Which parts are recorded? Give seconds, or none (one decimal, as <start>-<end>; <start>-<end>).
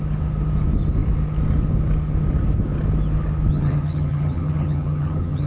0.0-3.5